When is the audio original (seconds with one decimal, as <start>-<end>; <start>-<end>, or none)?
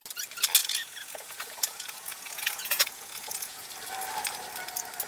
0.0-0.6; 3.7-5.1